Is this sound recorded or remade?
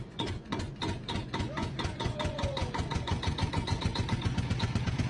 remade